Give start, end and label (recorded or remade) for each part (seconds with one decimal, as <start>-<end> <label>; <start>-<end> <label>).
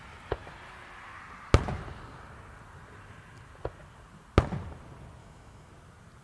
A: 0.0-5.2 recorded; 5.2-5.7 remade; 5.7-6.2 recorded